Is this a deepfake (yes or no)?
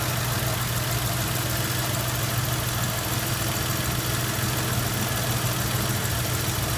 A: no